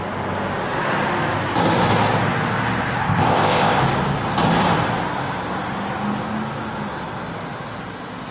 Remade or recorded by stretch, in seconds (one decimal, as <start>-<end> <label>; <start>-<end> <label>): 0.0-3.0 recorded; 3.0-3.8 remade; 3.8-8.3 recorded